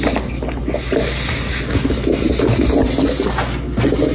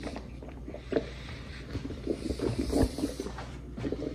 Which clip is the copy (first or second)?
second